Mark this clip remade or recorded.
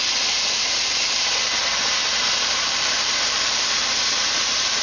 remade